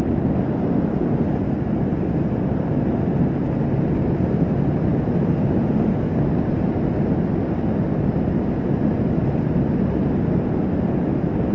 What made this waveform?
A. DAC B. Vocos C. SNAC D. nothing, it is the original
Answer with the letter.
D